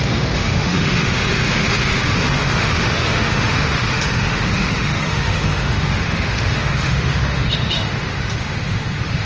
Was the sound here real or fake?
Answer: fake